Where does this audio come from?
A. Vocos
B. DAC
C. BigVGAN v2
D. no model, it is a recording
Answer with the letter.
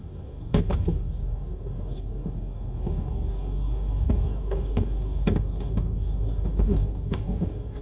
B